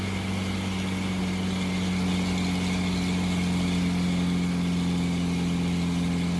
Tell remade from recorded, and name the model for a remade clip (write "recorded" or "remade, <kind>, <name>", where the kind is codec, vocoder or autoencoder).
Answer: recorded